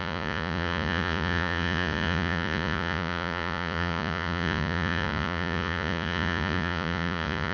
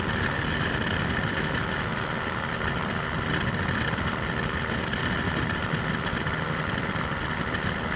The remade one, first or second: first